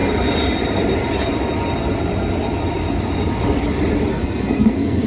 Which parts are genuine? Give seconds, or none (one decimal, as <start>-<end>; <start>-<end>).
0.0-4.1